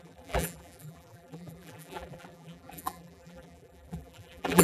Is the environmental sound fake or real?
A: fake